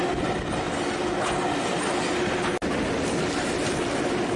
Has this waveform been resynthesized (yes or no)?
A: no